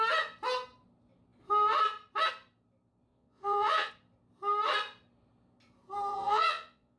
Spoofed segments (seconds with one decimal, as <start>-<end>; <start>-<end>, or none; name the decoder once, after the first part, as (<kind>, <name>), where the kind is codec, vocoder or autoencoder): 3.1-3.9 (vocoder, Vocos); 6.1-7.0